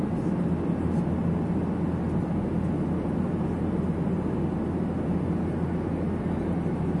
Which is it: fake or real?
real